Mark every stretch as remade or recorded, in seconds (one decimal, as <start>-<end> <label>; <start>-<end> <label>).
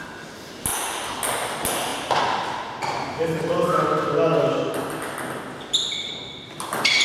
0.0-7.0 recorded